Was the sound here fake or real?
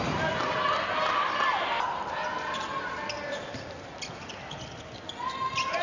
real